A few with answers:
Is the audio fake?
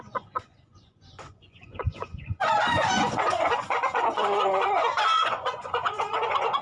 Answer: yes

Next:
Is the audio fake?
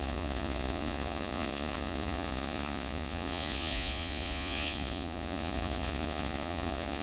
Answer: yes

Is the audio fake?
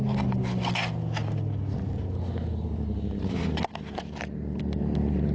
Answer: no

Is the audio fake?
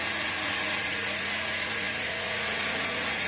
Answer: yes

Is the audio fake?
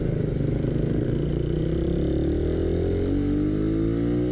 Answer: no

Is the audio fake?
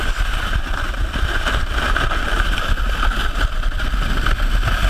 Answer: no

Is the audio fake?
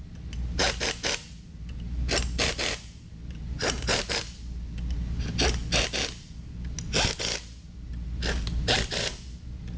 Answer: no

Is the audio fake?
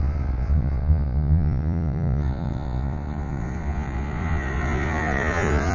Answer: yes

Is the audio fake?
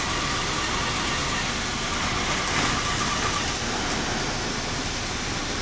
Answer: no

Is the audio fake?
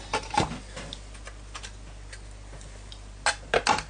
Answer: no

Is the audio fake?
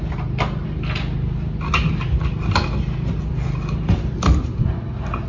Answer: no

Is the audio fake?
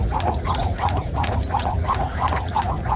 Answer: yes